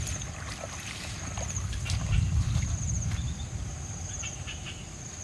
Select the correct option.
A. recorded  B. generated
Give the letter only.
B